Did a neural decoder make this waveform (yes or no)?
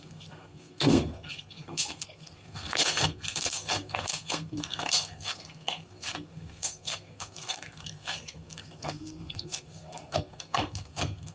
yes